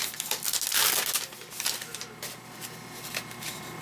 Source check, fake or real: real